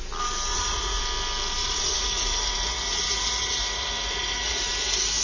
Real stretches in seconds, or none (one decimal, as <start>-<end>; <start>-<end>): 0.0-0.5; 1.0-1.6; 4.7-5.2